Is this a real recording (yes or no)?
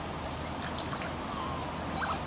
yes